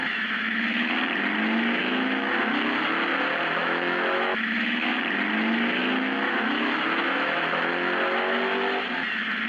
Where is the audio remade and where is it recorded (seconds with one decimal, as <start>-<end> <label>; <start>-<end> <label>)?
0.0-0.9 remade; 0.9-1.8 recorded; 1.8-2.3 remade; 2.3-3.6 recorded; 3.6-5.0 remade; 5.0-5.8 recorded; 5.8-7.7 remade; 7.7-9.5 recorded